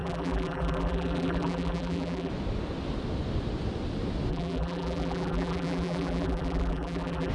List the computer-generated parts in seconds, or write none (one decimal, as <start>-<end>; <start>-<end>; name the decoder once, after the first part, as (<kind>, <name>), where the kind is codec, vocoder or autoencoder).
0.0-2.3 (vocoder, BigVGAN v2); 4.3-7.3